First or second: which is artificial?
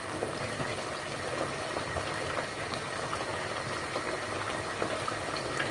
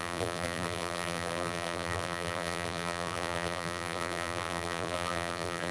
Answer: second